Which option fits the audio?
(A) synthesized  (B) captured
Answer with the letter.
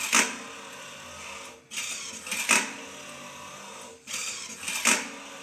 B